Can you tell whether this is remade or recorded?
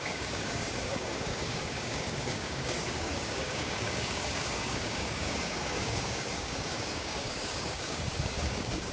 remade